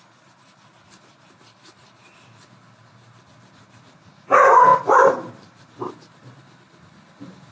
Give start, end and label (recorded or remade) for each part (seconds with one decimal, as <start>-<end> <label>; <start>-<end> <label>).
0.0-4.7 recorded; 4.7-5.9 remade; 5.9-7.5 recorded